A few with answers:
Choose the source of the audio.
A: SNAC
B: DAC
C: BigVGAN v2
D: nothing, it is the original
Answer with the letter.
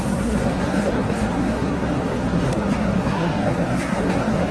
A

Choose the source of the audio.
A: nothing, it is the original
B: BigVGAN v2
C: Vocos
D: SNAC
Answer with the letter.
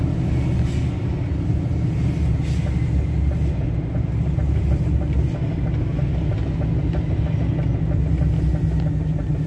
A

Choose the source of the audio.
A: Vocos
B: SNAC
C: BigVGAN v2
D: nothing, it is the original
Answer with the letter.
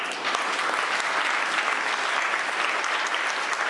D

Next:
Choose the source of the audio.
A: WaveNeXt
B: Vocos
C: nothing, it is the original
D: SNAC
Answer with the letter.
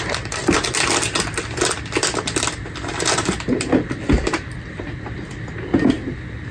C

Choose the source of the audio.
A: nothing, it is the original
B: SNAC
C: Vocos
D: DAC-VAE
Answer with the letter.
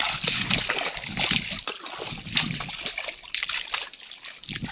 A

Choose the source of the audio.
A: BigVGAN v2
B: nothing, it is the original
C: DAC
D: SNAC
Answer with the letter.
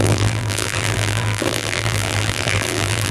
A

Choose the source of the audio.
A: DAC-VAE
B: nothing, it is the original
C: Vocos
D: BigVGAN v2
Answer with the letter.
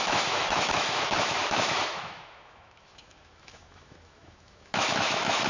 A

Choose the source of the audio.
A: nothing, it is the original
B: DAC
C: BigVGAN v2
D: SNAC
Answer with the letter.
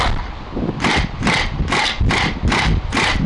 A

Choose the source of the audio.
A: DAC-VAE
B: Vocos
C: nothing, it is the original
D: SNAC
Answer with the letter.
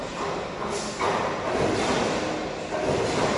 C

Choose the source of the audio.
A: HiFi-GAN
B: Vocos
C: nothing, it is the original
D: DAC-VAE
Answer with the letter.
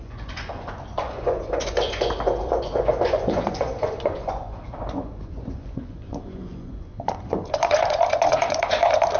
B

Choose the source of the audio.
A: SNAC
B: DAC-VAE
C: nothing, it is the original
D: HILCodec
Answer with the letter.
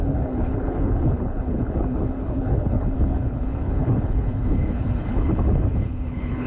D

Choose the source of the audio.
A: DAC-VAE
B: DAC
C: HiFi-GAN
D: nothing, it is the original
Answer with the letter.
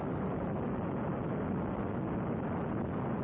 D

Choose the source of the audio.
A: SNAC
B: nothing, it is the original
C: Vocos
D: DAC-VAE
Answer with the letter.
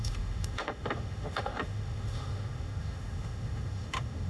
D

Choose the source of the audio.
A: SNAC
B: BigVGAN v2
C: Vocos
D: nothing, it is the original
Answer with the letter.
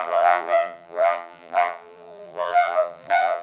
B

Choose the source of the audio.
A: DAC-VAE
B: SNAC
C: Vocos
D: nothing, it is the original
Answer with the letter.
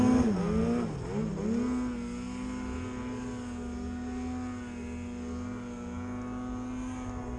D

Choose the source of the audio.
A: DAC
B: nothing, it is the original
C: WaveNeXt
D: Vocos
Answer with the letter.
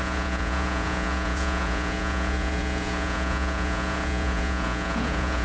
D